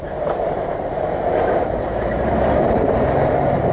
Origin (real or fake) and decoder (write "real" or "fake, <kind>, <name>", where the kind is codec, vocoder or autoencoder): fake, vocoder, BigVGAN v2